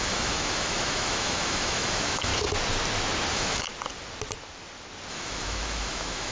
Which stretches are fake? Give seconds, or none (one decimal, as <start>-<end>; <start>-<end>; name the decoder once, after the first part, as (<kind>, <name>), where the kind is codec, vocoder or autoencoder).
0.0-2.3 (autoencoder, DAC-VAE); 3.3-3.7; 5.1-6.3